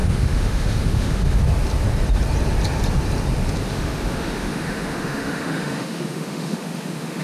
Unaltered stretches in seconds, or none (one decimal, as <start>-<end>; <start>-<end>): 1.4-3.7